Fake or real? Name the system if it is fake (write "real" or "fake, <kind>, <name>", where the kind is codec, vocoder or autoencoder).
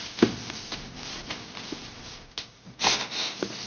real